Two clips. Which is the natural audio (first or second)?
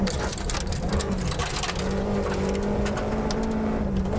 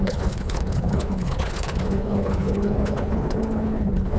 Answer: first